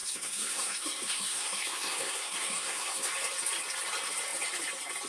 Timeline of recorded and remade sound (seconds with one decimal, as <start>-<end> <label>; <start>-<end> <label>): 0.0-3.1 remade; 3.1-5.1 recorded